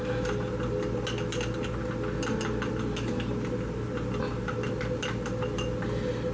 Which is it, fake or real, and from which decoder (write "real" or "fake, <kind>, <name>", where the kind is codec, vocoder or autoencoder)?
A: real